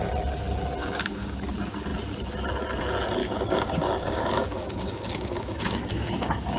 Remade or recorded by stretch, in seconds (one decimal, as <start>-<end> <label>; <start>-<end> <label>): 0.0-0.8 recorded; 0.8-1.4 remade; 1.4-3.2 recorded; 3.2-6.6 remade